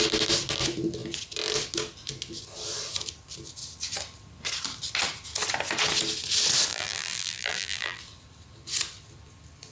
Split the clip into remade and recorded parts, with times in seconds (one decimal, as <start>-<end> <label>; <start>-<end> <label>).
0.0-6.7 recorded; 6.7-8.0 remade; 8.0-9.7 recorded